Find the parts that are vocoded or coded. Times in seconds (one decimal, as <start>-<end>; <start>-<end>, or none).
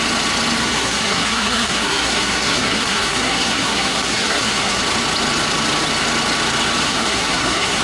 0.6-4.8; 6.8-7.8